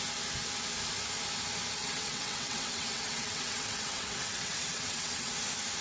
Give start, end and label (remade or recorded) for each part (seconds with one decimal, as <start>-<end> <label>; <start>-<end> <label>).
0.0-1.8 recorded; 1.8-5.3 remade; 5.3-5.8 recorded